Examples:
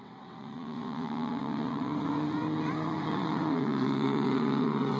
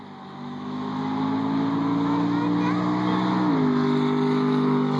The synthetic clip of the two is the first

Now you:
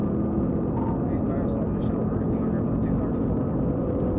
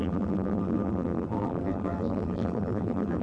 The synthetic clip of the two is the second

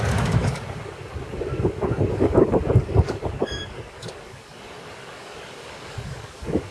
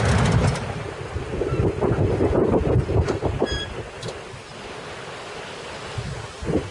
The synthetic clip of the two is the first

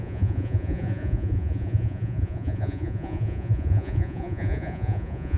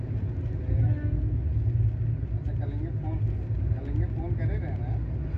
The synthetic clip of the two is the first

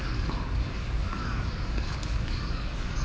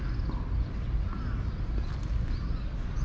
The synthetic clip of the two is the first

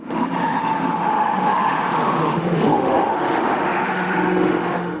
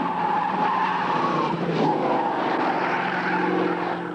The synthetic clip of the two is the first